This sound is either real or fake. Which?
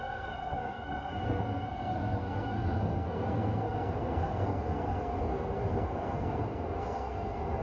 fake